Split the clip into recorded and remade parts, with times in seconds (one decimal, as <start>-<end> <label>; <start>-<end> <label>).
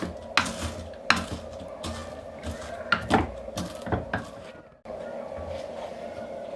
0.0-6.6 recorded